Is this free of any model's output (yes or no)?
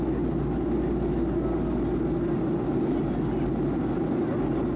yes